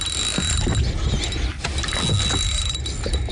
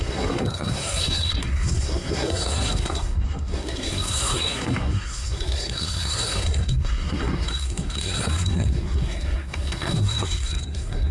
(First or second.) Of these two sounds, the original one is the first